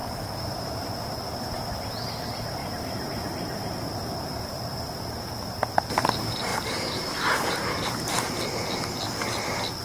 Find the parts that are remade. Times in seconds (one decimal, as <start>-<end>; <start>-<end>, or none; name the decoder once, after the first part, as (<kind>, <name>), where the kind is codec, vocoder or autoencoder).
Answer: 0.0-0.8 (vocoder, BigVGAN v2); 2.6-5.2; 6.5-8.3